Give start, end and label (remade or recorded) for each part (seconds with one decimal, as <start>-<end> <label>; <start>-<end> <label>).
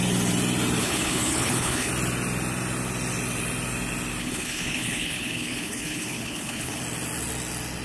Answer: 0.0-0.8 recorded; 0.8-1.9 remade; 1.9-4.2 recorded; 4.2-6.8 remade; 6.8-7.8 recorded